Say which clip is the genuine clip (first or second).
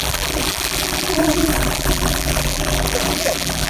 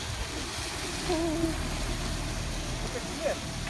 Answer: second